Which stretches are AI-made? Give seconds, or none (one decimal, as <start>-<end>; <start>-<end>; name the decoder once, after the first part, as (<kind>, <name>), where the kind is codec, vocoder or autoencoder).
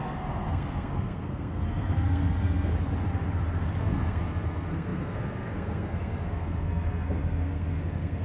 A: 0.0-2.7 (codec, SNAC); 3.8-8.2